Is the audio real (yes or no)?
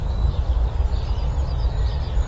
yes